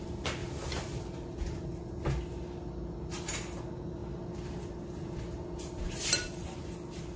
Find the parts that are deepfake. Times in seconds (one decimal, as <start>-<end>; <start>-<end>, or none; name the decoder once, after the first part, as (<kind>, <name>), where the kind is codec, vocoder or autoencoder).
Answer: none